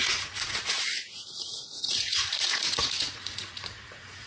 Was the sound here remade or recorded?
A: remade